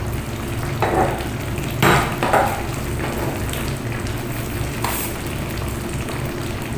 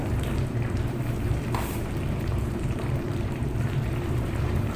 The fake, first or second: second